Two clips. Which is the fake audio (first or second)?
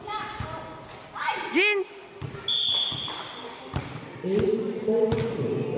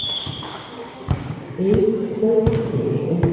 second